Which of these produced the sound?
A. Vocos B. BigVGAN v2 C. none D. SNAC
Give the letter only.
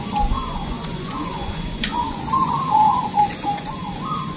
A